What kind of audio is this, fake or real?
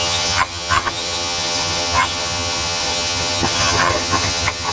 fake